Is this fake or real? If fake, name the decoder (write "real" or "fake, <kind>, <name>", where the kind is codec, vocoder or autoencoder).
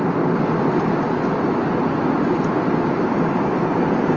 real